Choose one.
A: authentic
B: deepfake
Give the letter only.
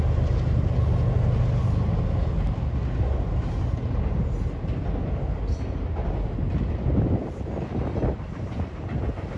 A